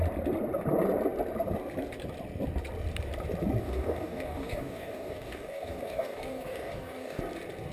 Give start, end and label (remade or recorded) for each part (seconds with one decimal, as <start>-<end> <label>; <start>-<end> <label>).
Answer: 0.0-3.6 recorded; 3.6-7.2 remade; 7.2-7.7 recorded